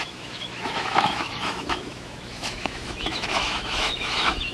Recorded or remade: remade